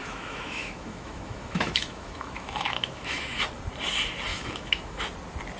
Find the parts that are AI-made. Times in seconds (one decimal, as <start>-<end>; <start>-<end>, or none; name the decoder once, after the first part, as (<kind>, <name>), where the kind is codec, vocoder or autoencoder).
0.0-3.4 (autoencoder, DAC-VAE); 4.3-5.0